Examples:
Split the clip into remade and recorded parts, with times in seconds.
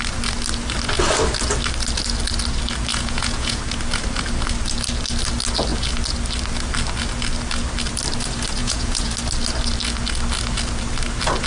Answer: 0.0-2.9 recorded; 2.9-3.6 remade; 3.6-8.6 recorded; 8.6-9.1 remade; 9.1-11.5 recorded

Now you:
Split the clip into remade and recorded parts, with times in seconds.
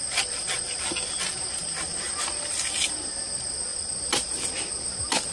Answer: 0.0-5.3 recorded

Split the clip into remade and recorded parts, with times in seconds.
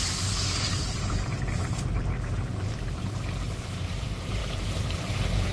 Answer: 0.0-5.5 remade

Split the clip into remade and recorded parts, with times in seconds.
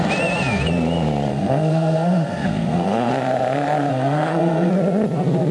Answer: 0.0-1.3 recorded; 1.3-3.1 remade; 3.1-3.9 recorded; 3.9-4.7 remade; 4.7-5.5 recorded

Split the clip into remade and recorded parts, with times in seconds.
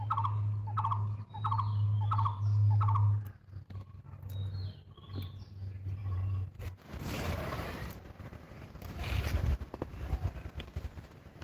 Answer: 0.0-6.0 recorded; 6.0-9.3 remade; 9.3-9.9 recorded; 9.9-11.4 remade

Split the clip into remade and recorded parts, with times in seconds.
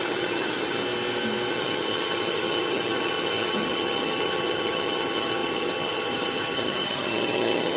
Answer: 0.0-0.8 remade; 0.8-1.5 recorded; 1.5-7.8 remade